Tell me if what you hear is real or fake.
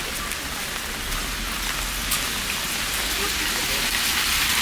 real